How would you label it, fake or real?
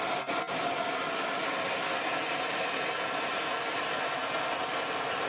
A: real